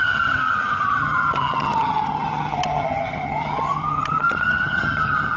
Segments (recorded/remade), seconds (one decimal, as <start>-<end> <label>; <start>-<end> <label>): 0.0-5.4 remade